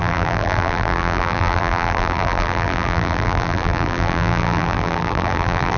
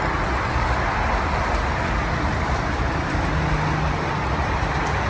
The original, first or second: second